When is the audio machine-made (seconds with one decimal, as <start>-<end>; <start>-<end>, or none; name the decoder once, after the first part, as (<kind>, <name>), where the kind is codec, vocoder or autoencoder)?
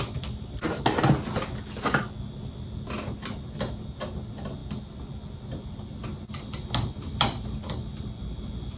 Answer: none